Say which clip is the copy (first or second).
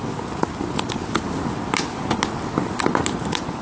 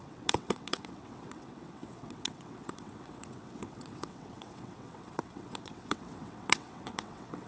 second